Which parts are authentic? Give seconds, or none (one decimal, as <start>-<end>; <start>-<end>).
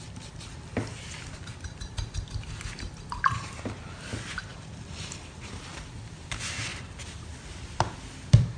0.0-4.5; 5.7-6.7